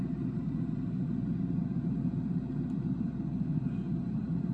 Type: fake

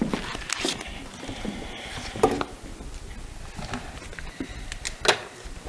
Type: real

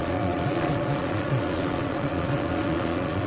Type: fake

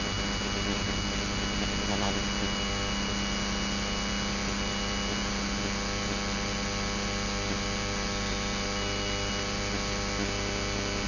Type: real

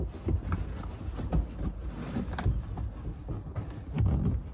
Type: real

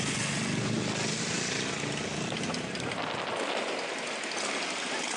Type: real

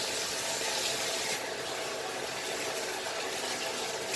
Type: real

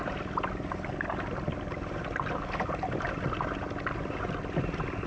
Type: real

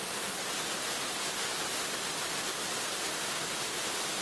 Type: real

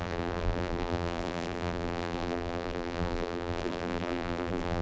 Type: fake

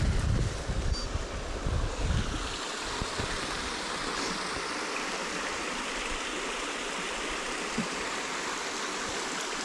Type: real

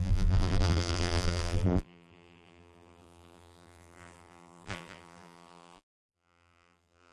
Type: fake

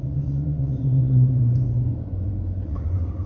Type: fake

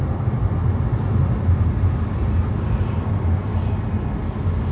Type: real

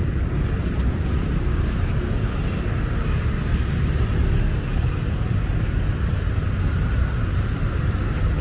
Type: real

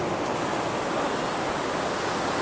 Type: real